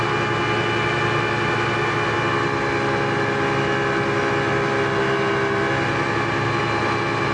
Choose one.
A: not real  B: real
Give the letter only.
B